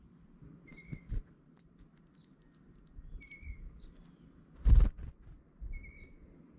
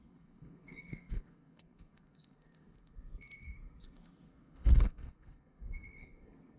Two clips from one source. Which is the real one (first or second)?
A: first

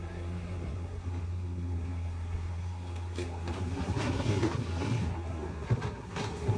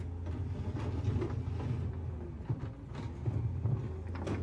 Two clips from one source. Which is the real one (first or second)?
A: second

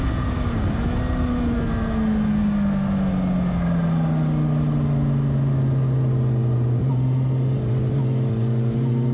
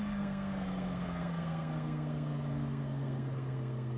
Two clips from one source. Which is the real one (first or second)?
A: first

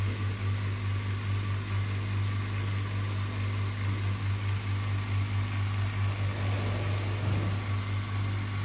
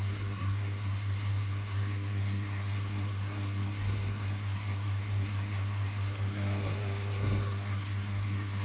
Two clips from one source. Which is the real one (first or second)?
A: first